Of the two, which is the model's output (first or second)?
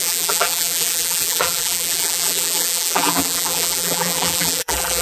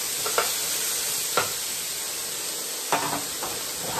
first